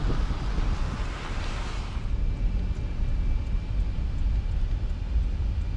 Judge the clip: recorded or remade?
recorded